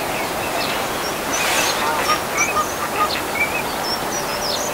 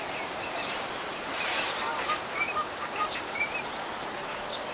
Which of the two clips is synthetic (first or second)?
second